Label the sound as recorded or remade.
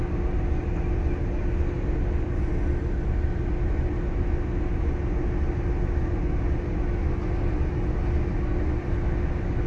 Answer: recorded